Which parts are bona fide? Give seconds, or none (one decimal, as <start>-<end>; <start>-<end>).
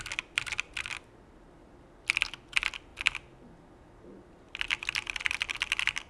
0.0-6.1